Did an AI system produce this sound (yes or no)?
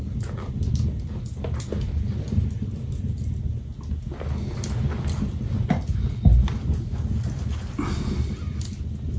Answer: no